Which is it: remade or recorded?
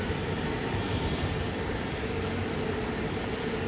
recorded